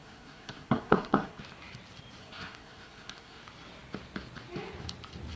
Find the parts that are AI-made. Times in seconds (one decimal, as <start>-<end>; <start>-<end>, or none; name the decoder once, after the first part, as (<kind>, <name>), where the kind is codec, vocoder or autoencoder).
0.0-1.4 (codec, SNAC); 2.2-3.4